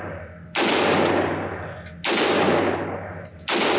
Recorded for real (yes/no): yes